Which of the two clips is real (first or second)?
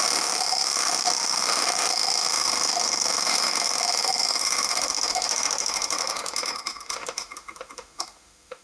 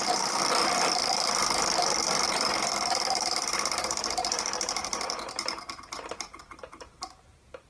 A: second